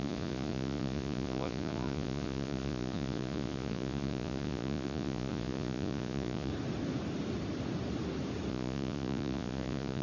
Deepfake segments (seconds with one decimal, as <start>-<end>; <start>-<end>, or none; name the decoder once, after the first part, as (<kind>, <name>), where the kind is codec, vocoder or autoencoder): 0.0-6.5 (vocoder, Vocos); 8.5-10.0